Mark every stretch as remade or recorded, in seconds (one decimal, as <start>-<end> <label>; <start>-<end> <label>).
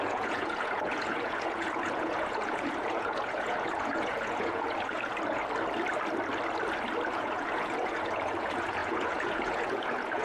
0.0-5.4 remade; 5.4-7.1 recorded; 7.1-10.2 remade